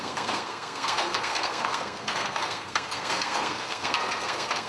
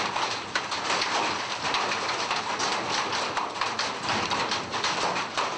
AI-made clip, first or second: first